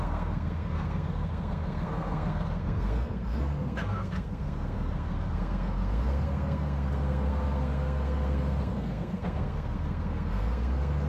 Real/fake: fake